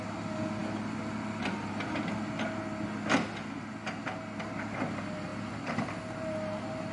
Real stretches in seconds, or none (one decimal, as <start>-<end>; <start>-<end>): 0.0-6.9

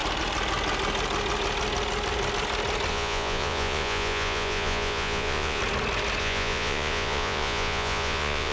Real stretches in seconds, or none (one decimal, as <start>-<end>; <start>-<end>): 0.0-2.9; 5.6-6.2